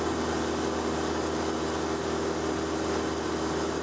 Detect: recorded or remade recorded